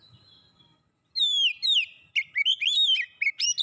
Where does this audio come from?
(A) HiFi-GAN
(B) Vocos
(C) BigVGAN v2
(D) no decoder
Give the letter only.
D